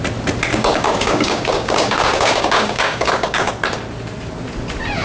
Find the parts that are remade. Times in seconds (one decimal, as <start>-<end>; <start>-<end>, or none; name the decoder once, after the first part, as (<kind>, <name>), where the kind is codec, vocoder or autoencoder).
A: 0.5-3.5 (codec, DAC)